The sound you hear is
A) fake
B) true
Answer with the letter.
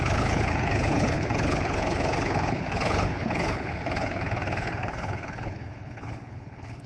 A